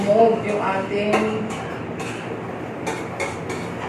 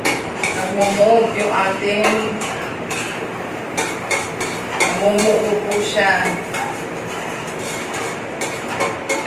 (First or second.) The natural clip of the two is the first